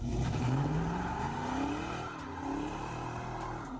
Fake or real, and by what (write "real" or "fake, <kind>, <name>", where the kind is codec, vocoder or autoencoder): fake, vocoder, BigVGAN v2